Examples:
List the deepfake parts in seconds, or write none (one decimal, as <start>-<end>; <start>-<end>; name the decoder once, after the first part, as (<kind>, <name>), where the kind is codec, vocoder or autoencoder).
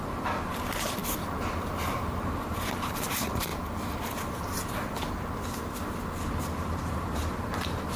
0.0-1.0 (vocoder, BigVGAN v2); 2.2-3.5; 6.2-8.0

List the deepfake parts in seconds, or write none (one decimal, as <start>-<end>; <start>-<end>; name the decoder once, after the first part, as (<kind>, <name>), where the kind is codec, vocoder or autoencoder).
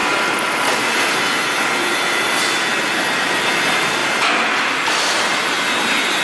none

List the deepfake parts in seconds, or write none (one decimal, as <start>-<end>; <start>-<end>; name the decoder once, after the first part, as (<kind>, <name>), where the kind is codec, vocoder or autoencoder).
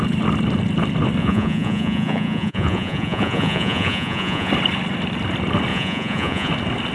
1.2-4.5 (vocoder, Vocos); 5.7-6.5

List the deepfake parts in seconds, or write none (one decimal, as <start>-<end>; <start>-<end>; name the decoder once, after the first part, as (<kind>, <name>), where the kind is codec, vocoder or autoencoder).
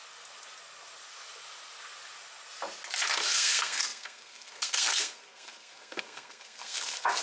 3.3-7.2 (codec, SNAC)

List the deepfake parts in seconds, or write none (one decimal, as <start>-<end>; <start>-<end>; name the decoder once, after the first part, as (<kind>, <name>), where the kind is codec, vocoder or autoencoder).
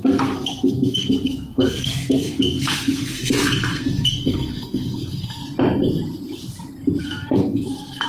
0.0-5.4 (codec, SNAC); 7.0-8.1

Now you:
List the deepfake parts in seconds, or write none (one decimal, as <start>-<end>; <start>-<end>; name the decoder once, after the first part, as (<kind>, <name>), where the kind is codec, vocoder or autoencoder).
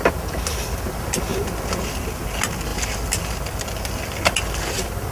none